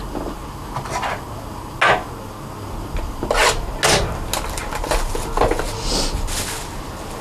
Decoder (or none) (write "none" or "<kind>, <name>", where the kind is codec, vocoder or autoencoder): none